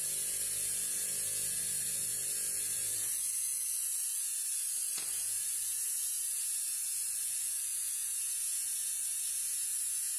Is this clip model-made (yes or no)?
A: yes